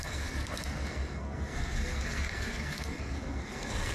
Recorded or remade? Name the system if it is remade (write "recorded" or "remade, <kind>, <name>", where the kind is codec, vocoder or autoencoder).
remade, codec, SNAC